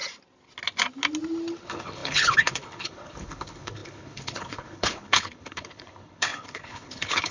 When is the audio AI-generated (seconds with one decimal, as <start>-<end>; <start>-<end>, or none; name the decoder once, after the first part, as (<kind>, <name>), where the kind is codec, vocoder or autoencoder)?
1.6-7.3 (codec, HILCodec)